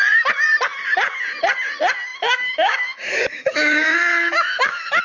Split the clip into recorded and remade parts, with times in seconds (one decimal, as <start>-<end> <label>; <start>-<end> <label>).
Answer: 0.0-2.1 recorded; 2.1-5.0 remade